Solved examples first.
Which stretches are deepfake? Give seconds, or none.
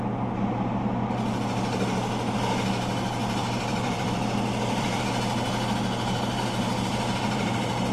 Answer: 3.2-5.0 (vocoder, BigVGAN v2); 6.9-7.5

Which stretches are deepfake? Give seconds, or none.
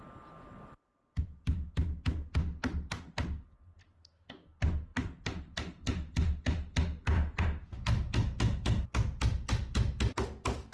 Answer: none